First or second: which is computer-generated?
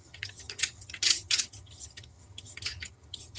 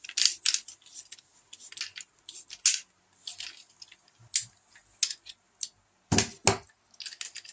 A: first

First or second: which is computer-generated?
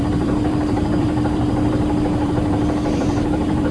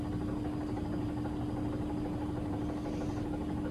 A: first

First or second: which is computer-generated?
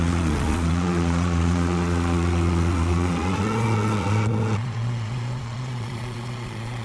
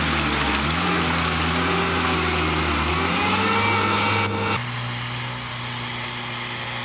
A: first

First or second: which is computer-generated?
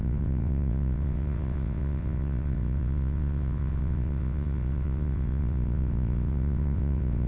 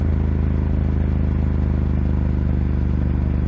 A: first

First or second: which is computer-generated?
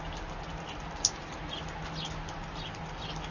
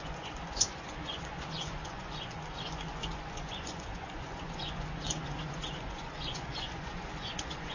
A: second